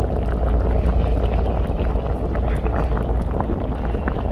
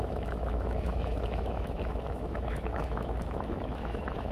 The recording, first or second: first